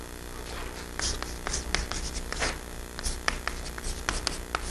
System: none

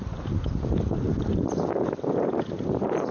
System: none